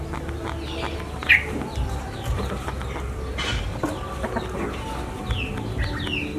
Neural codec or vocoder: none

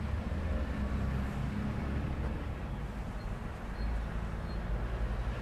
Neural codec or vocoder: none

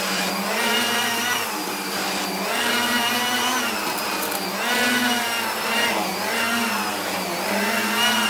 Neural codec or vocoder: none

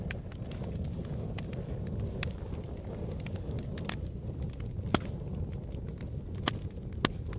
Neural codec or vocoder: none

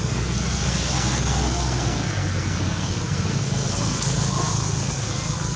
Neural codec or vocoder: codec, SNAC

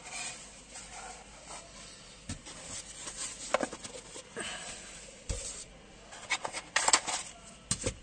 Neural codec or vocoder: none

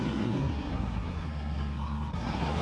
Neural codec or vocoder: codec, SNAC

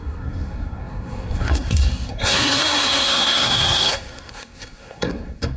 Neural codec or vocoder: codec, SNAC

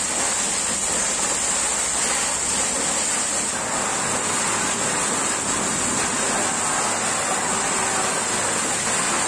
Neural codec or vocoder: none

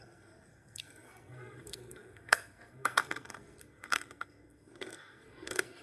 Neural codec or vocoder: codec, SNAC